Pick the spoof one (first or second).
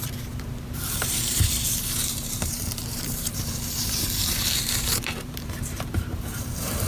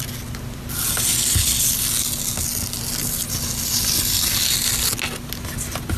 first